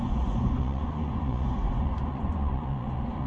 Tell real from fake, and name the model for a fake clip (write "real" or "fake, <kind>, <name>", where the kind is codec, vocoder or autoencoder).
fake, vocoder, Vocos